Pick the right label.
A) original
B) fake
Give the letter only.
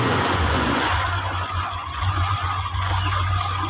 B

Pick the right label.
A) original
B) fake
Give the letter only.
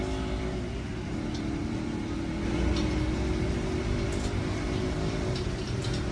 A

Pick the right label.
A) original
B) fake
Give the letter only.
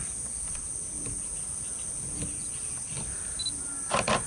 A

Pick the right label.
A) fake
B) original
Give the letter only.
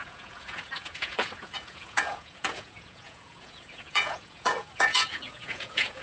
A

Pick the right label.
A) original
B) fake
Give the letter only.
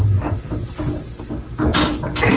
A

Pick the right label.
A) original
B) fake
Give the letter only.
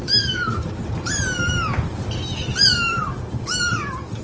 A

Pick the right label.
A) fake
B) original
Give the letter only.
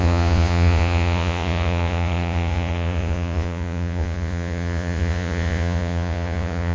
A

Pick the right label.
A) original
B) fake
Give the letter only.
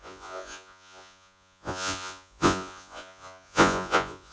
B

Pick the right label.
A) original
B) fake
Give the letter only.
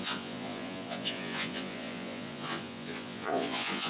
B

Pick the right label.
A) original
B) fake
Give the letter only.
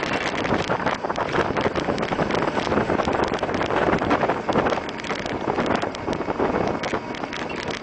A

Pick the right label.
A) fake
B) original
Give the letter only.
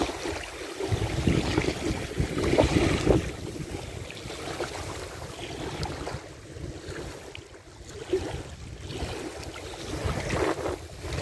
B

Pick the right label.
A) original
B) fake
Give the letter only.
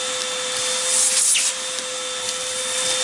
A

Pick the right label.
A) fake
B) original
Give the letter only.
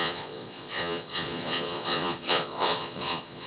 A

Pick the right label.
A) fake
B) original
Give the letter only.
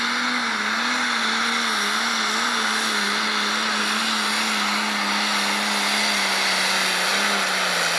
B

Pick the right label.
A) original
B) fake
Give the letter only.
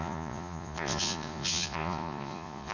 B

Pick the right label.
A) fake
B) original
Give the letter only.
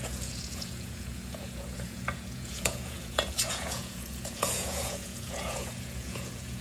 A